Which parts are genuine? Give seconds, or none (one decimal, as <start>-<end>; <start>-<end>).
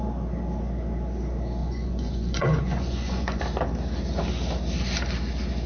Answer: 0.0-1.6; 3.4-5.7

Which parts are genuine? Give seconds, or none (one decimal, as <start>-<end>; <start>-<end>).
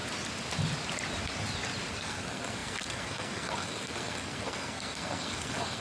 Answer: 0.0-1.9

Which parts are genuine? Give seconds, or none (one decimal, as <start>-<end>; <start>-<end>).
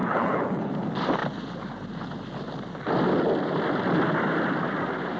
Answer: 0.7-5.2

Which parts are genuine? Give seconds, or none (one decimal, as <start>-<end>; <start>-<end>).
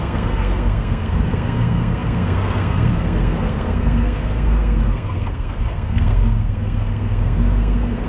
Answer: none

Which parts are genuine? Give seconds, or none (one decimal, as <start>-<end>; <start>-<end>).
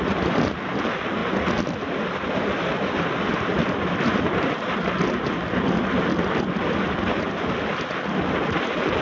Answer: 0.0-1.2; 6.4-9.0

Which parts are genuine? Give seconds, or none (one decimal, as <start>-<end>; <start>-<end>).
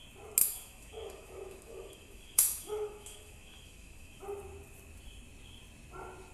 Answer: 0.0-0.4; 4.2-6.3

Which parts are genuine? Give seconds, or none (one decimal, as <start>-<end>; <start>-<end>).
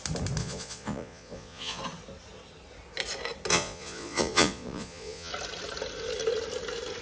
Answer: 0.0-0.4; 1.8-3.5; 5.3-7.0